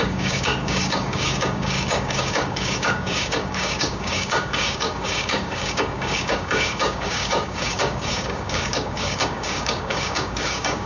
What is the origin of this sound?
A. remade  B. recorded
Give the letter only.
A